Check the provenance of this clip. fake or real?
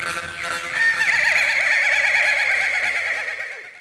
real